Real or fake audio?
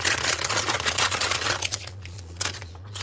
fake